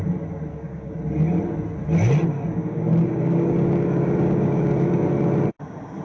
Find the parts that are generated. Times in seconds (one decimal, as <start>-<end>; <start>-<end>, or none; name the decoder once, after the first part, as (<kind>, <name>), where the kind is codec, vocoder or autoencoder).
0.5-1.0 (codec, DAC); 2.5-5.1